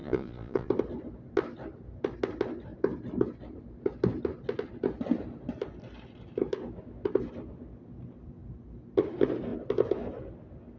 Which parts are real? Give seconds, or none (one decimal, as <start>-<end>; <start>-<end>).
0.7-10.8